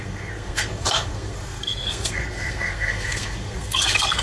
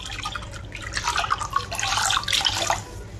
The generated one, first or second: first